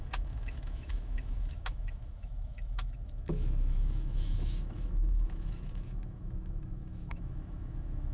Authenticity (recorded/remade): remade